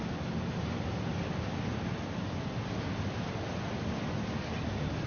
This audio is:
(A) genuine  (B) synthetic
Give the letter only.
A